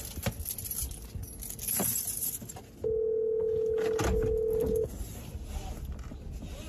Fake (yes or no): no